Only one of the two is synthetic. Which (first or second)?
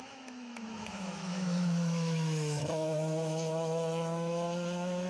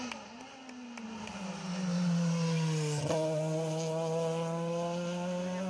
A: first